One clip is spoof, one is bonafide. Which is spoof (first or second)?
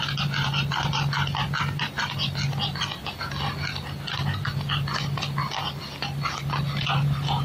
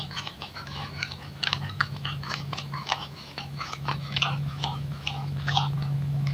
second